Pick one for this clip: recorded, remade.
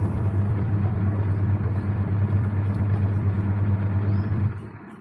remade